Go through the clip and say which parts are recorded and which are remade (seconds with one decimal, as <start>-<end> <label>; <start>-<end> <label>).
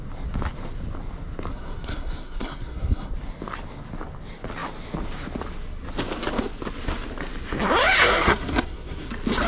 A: 0.0-1.5 recorded; 1.5-3.1 remade; 3.1-8.0 recorded; 8.0-9.1 remade; 9.1-9.5 recorded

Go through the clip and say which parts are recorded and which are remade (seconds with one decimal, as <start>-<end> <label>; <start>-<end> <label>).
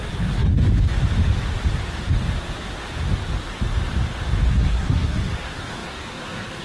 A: 0.0-0.5 remade; 0.5-4.5 recorded; 4.5-6.6 remade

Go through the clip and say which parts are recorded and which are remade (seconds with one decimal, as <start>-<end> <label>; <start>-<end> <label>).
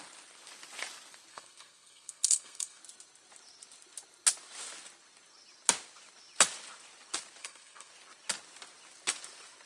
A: 0.0-1.3 recorded; 1.3-2.8 remade; 2.8-7.4 recorded; 7.4-7.9 remade; 7.9-9.7 recorded